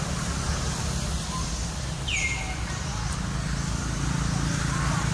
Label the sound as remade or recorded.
recorded